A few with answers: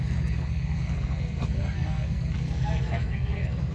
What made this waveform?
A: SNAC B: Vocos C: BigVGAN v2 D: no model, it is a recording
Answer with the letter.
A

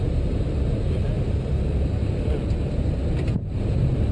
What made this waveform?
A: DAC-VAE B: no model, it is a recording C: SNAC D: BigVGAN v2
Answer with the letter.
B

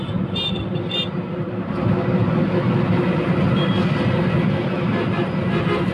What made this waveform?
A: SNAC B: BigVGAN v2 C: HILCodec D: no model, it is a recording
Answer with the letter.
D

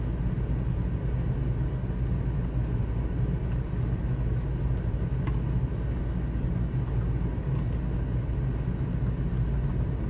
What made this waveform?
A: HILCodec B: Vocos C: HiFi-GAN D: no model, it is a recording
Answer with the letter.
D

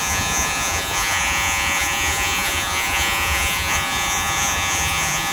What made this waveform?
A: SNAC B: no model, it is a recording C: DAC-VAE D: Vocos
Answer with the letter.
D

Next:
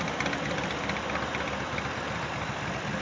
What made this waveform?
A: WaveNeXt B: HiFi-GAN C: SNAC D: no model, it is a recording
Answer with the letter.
D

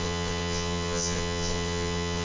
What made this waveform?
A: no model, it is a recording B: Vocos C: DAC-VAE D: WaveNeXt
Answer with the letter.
D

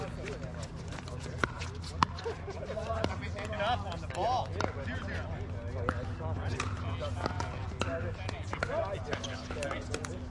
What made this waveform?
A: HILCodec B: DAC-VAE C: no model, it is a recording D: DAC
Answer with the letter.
C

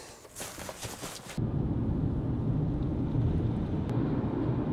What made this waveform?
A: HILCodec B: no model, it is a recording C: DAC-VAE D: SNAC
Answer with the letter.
B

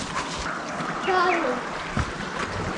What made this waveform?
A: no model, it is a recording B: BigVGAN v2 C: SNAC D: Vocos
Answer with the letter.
A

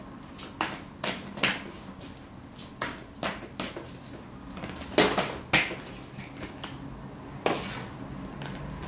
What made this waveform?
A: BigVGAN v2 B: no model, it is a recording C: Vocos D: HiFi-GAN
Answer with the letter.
B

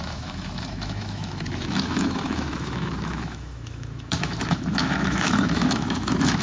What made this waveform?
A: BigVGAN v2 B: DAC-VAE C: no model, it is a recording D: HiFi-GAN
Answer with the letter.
B